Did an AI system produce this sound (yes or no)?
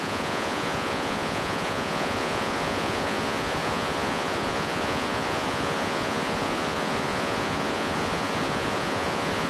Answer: yes